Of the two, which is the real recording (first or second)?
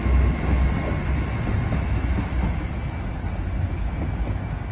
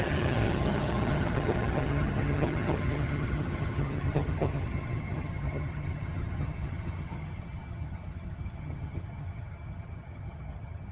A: first